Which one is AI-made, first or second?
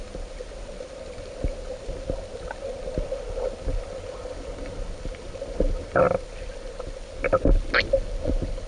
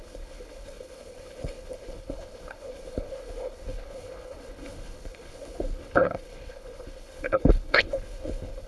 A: second